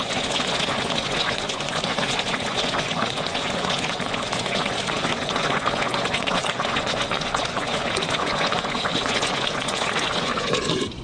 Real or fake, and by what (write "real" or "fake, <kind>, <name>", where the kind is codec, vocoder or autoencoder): fake, vocoder, Vocos